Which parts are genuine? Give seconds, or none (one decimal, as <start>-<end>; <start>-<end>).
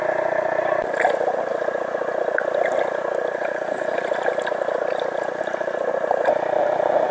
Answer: 0.0-7.1